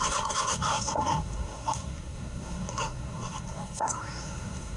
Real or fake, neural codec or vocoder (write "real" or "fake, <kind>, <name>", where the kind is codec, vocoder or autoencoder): fake, codec, SNAC